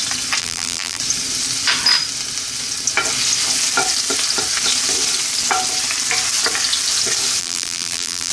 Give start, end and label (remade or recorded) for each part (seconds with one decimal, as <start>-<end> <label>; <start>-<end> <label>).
0.0-0.4 recorded; 0.4-1.0 remade; 1.0-7.4 recorded; 7.4-8.3 remade